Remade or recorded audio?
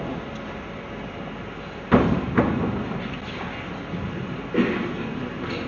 recorded